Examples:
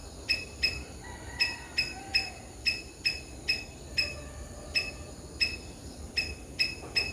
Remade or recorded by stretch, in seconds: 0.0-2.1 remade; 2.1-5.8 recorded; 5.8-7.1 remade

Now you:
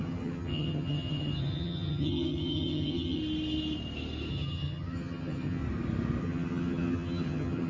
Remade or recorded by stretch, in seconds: 0.0-3.2 remade; 3.2-4.3 recorded; 4.3-5.6 remade; 5.6-6.2 recorded; 6.2-7.7 remade

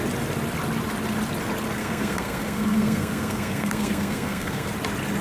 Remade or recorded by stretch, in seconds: 0.0-1.8 recorded; 1.8-4.7 remade; 4.7-5.2 recorded

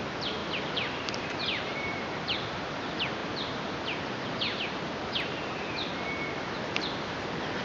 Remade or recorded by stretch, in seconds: 0.0-0.4 recorded; 0.4-2.0 remade; 2.0-7.6 recorded

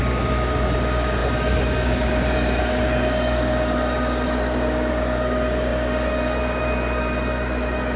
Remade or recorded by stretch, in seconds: 0.0-8.0 remade

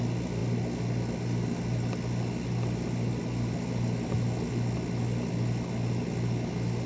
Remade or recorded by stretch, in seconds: 0.0-6.9 recorded